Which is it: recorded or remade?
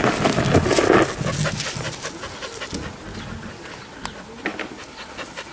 recorded